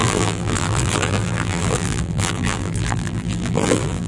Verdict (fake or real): fake